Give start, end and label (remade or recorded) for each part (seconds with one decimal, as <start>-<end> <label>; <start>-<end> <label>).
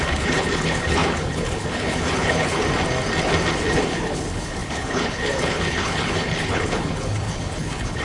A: 0.0-2.6 remade; 2.6-3.7 recorded; 3.7-8.0 remade